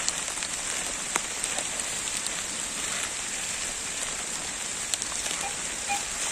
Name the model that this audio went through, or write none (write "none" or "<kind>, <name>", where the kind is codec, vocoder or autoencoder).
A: vocoder, BigVGAN v2